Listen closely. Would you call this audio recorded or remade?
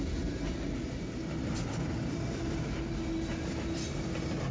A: recorded